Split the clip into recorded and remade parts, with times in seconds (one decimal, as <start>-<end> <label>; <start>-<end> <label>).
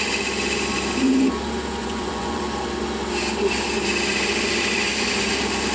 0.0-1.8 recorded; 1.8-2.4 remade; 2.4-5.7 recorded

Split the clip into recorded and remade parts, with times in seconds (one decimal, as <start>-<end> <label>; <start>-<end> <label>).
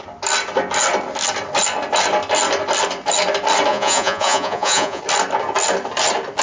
0.0-3.7 recorded; 3.7-5.0 remade; 5.0-6.4 recorded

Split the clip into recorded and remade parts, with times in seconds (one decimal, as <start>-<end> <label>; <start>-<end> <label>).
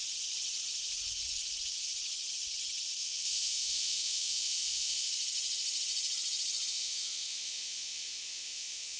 0.0-3.0 recorded; 3.0-5.1 remade; 5.1-6.7 recorded; 6.7-9.0 remade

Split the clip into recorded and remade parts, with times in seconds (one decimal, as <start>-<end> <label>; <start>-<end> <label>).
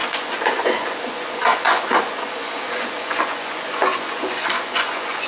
0.0-5.3 remade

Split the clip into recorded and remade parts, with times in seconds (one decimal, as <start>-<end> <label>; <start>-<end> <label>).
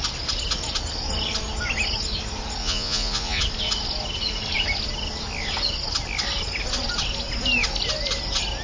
0.0-2.6 recorded; 2.6-3.4 remade; 3.4-8.6 recorded